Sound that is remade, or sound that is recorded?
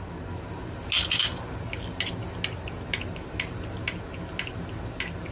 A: recorded